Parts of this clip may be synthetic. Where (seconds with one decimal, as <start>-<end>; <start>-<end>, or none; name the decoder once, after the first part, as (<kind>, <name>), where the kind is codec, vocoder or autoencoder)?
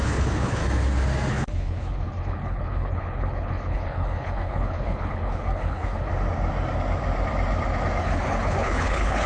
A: 0.0-0.6 (codec, HILCodec); 1.3-6.1; 8.0-9.3